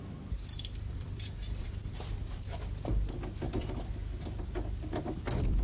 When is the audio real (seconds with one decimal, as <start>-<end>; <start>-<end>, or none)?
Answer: 0.0-0.5; 1.6-5.6